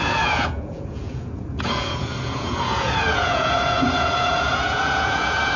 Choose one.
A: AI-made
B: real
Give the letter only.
A